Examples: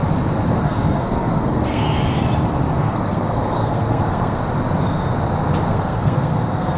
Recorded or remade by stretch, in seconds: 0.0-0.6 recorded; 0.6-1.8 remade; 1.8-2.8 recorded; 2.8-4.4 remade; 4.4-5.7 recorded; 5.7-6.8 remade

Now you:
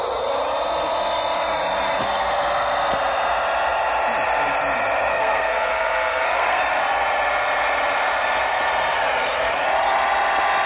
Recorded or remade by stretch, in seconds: 0.0-5.1 recorded; 5.1-6.6 remade; 6.6-10.7 recorded

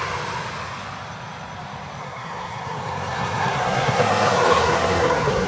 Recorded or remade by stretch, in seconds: 0.0-2.0 recorded; 2.0-5.5 remade

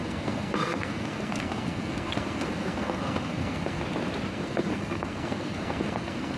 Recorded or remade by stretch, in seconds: 0.0-3.8 remade; 3.8-4.3 recorded; 4.3-6.4 remade

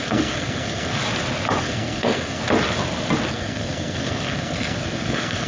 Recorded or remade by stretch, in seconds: 0.0-1.0 remade; 1.0-1.6 recorded; 1.6-2.4 remade; 2.4-3.3 recorded; 3.3-5.5 remade